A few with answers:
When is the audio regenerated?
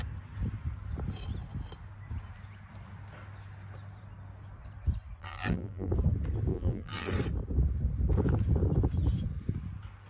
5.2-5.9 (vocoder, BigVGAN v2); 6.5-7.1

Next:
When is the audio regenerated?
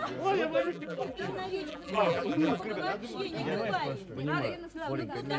0.6-1.2 (vocoder, BigVGAN v2); 1.7-2.6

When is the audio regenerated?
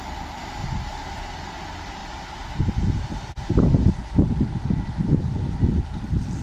0.6-1.2 (vocoder, BigVGAN v2)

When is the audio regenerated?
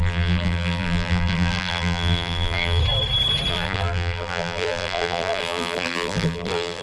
0.0-2.8 (vocoder, BigVGAN v2); 3.5-6.8